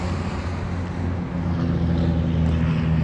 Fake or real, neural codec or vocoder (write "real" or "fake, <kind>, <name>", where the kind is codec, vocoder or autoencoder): real